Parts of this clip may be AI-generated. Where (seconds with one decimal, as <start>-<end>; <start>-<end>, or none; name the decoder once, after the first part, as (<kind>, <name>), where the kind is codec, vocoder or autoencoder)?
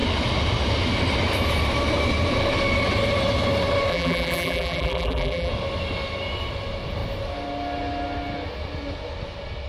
3.9-5.5 (vocoder, BigVGAN v2)